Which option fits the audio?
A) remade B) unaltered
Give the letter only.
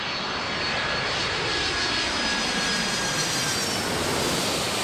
B